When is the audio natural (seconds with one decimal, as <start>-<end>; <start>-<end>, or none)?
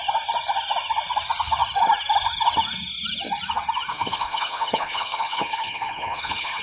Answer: 0.0-3.9